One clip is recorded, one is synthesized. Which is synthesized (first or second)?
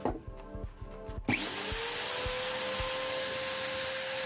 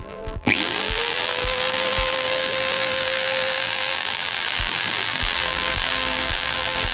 second